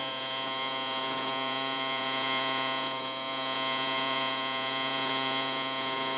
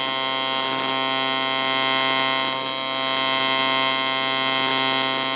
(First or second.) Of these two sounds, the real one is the second